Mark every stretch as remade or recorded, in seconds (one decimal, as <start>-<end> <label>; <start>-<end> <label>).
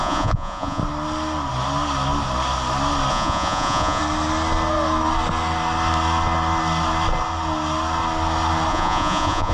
0.0-0.8 remade; 0.8-3.1 recorded; 3.1-4.0 remade; 4.0-8.7 recorded; 8.7-9.5 remade